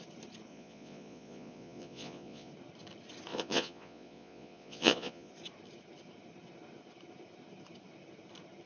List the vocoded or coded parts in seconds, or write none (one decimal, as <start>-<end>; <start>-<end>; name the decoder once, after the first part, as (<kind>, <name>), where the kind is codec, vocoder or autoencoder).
0.5-2.5 (vocoder, Vocos); 3.3-5.3